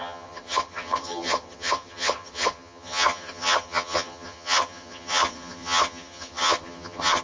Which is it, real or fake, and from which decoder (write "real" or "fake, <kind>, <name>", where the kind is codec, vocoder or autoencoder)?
fake, vocoder, HiFi-GAN